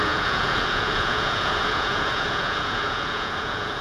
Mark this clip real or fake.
fake